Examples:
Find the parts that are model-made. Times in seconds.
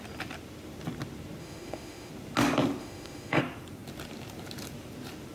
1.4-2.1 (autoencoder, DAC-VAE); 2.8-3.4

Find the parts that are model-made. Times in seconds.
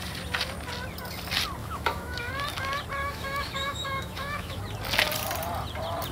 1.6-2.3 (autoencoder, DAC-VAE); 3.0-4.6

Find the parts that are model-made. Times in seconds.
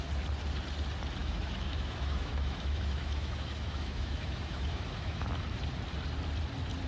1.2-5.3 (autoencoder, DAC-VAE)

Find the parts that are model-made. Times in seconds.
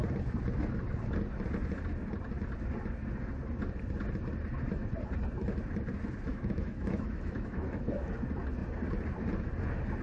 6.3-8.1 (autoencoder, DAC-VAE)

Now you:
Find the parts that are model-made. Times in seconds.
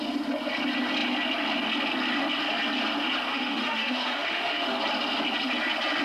3.3-4.8 (autoencoder, DAC-VAE)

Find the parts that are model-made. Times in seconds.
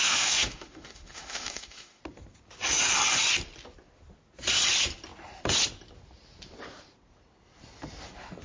0.0-2.0 (autoencoder, DAC-VAE)